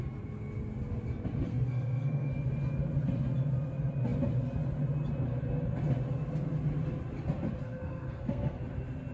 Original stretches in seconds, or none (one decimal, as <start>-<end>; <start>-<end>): 0.0-1.5; 2.3-7.6; 8.6-9.1